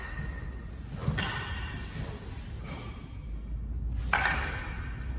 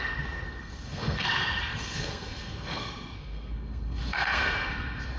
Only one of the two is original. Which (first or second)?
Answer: first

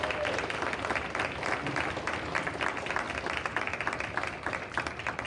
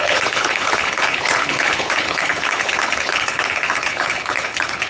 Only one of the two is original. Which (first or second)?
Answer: first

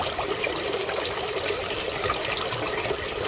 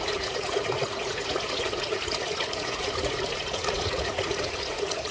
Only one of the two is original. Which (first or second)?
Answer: first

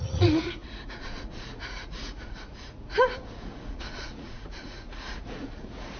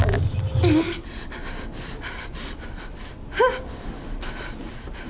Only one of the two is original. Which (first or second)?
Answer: second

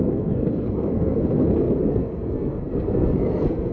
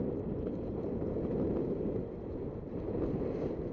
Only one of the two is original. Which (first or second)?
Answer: second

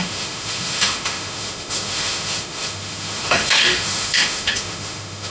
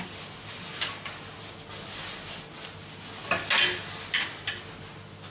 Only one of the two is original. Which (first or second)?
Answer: second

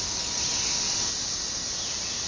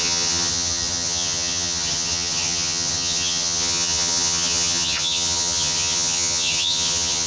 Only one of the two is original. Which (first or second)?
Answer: first